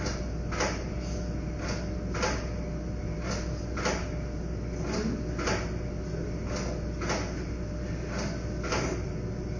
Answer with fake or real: real